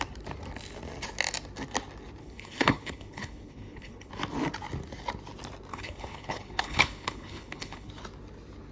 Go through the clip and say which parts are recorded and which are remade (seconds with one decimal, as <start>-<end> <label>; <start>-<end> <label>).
0.0-2.2 recorded; 2.2-4.1 remade; 4.1-5.7 recorded; 5.7-7.9 remade; 7.9-8.7 recorded